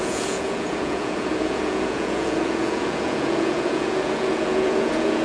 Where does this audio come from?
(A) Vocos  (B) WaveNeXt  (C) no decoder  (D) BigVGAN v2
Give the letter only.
A